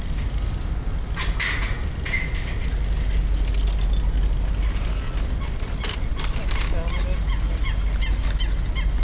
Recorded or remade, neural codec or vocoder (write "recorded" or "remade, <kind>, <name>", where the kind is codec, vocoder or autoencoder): recorded